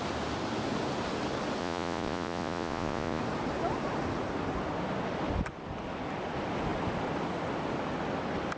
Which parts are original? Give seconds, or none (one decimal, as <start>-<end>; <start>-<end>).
0.0-1.6; 3.2-8.6